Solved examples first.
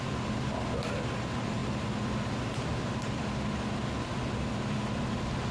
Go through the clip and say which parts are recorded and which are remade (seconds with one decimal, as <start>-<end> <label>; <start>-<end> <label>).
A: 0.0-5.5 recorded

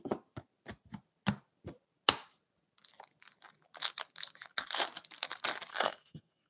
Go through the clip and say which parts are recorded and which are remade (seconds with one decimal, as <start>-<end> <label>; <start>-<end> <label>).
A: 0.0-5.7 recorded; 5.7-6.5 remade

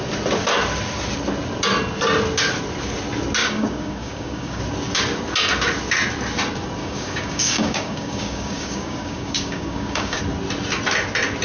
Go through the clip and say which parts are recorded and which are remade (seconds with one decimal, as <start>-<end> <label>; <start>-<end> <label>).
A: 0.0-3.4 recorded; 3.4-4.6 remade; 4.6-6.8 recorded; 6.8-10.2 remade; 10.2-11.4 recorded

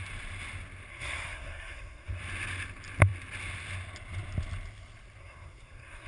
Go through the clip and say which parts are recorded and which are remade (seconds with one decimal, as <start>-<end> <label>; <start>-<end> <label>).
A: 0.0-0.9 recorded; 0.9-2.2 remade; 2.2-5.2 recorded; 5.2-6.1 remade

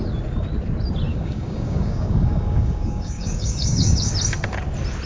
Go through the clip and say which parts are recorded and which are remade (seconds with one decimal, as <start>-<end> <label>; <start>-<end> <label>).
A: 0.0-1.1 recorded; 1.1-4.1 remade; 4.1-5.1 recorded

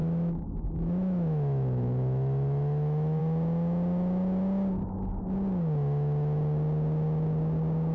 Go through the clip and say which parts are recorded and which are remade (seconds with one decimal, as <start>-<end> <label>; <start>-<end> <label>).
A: 0.0-3.2 remade; 3.2-7.9 recorded